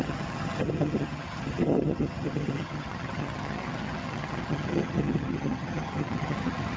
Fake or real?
fake